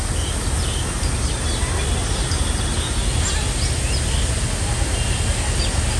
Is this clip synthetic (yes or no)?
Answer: no